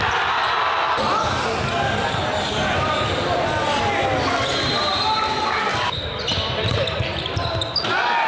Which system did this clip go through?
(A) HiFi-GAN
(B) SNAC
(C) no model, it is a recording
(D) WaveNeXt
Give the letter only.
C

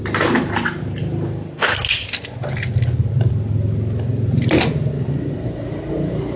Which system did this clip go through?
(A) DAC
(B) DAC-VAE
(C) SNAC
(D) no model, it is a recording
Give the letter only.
D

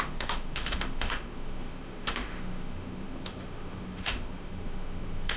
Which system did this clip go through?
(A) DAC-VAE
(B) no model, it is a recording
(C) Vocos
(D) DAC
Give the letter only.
A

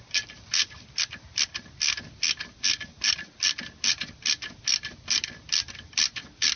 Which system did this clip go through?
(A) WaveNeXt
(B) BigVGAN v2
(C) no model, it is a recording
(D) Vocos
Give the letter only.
C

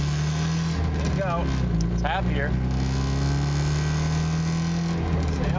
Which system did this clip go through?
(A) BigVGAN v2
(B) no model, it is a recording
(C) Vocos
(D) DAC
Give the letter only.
B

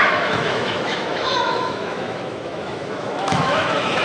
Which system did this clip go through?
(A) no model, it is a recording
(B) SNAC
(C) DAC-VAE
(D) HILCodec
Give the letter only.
C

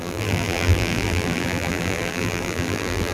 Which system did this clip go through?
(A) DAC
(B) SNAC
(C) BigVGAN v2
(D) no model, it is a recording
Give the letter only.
C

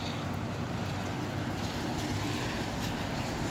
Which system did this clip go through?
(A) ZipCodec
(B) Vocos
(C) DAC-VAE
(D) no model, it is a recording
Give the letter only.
D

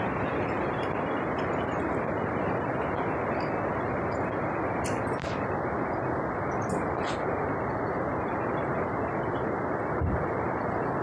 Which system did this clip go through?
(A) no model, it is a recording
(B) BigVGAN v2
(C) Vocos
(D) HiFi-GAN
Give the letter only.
A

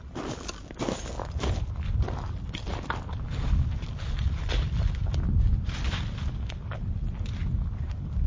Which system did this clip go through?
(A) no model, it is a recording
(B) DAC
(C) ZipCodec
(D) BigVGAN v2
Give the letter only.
A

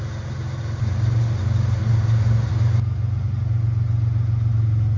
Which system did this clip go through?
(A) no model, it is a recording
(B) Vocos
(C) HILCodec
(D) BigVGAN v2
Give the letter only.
A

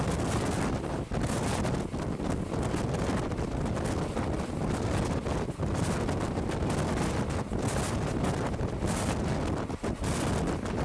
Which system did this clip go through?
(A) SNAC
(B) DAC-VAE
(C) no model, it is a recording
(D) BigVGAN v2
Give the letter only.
C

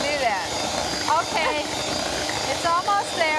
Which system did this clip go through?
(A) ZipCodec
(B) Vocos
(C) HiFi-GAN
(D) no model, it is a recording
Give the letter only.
D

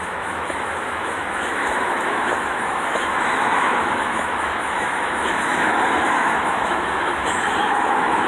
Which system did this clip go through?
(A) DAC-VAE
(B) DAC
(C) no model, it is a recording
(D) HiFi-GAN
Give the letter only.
A